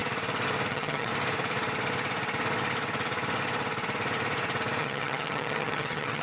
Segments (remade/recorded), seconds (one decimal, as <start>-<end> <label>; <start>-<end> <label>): 0.0-0.7 recorded; 0.7-1.1 remade; 1.1-4.8 recorded; 4.8-6.2 remade